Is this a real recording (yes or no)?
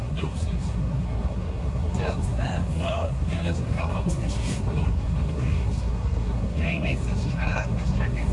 no